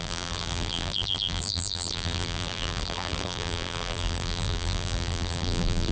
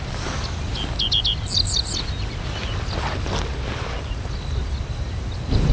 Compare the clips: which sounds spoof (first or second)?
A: first